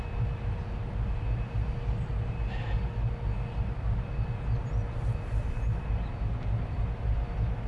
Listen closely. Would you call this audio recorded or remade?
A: recorded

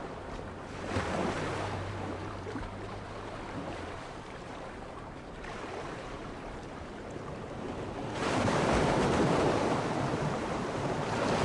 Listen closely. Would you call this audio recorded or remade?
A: remade